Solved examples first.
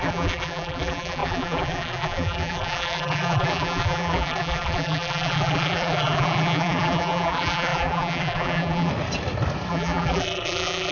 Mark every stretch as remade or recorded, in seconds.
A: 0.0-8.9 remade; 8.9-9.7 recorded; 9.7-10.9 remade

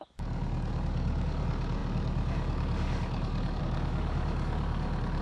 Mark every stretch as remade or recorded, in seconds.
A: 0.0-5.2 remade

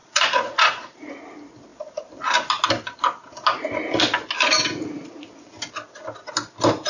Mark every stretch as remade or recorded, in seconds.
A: 0.0-1.1 remade; 1.1-6.9 recorded

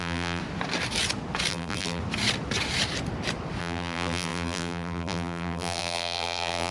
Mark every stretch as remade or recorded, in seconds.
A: 0.0-0.4 remade; 0.4-1.5 recorded; 1.5-2.0 remade; 2.0-3.6 recorded; 3.6-6.7 remade

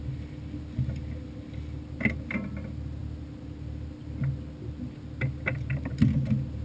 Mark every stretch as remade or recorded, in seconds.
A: 0.0-6.6 recorded

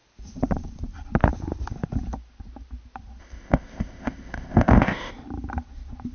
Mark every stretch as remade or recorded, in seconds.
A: 0.0-3.2 recorded; 3.2-5.1 remade; 5.1-6.1 recorded